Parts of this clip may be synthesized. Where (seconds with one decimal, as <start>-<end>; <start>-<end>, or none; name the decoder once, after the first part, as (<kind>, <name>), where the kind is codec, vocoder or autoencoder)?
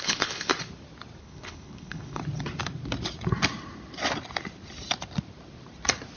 0.0-0.5 (codec, HILCodec); 1.2-2.2